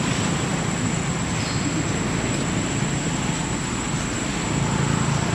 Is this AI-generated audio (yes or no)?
no